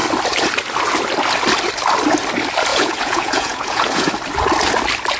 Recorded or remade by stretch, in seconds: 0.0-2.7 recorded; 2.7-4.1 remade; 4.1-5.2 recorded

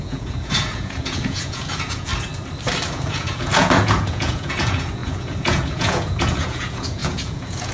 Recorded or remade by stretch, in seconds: 0.0-2.1 remade; 2.1-2.9 recorded; 2.9-7.7 remade

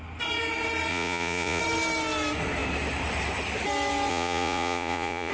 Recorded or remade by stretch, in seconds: 0.0-0.9 recorded; 0.9-1.6 remade; 1.6-4.1 recorded; 4.1-5.3 remade

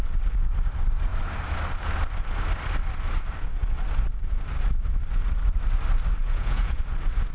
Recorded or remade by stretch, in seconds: 0.0-6.2 recorded; 6.2-6.8 remade; 6.8-7.3 recorded

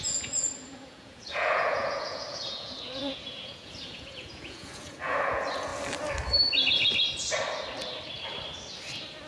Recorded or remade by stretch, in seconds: 0.0-5.7 remade; 5.7-9.3 recorded

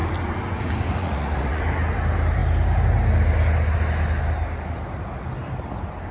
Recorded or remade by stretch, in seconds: 0.0-1.0 recorded; 1.0-1.6 remade; 1.6-6.1 recorded

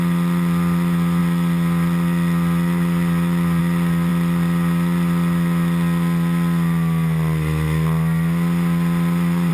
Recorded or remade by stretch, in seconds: 0.0-9.5 recorded

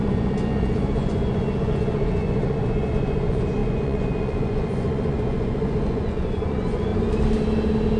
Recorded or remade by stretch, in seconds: 0.0-6.9 remade; 6.9-8.0 recorded